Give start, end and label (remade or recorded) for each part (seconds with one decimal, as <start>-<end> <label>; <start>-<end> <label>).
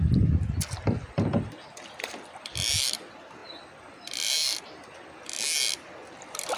0.0-6.6 recorded